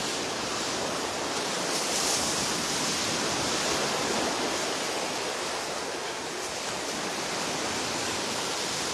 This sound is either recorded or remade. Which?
recorded